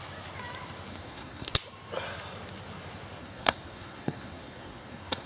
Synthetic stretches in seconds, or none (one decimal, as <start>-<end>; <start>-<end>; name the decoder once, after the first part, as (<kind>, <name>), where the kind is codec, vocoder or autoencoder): 0.9-1.5 (codec, SNAC); 3.2-5.3